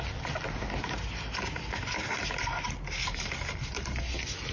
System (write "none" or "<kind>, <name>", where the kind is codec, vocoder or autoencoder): none